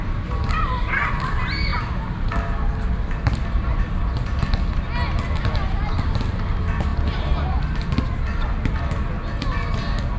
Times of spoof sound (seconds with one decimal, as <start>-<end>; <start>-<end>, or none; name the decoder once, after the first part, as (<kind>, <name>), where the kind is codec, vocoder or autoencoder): 6.9-7.6 (vocoder, BigVGAN v2)